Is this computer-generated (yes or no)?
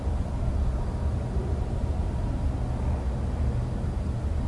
no